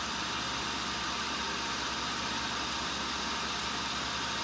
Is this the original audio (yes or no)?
yes